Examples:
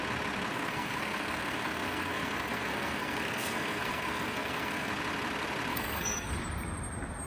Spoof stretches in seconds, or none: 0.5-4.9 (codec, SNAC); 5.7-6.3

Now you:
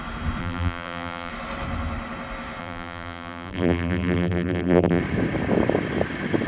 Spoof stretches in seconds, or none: 0.4-1.3 (vocoder, BigVGAN v2); 2.6-5.0

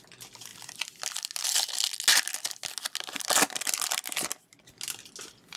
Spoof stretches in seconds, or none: none